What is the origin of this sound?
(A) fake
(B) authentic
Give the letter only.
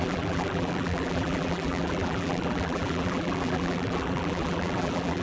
A